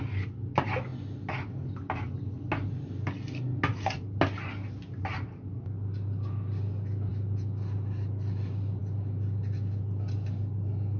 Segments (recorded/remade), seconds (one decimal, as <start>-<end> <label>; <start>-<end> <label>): 0.0-11.0 recorded